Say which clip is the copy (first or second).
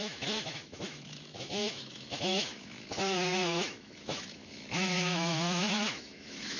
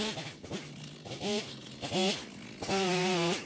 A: first